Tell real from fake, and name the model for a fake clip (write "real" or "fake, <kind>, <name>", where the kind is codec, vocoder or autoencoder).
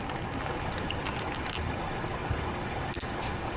real